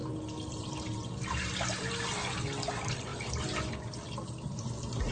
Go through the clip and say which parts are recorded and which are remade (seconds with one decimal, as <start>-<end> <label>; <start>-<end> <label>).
0.0-5.1 recorded